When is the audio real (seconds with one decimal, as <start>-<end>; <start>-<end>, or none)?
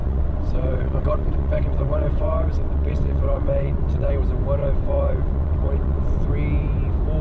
4.1-4.6; 6.3-7.2